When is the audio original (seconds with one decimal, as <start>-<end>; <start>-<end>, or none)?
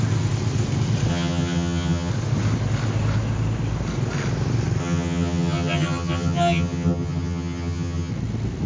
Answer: 0.0-1.1; 2.1-4.8; 8.1-8.7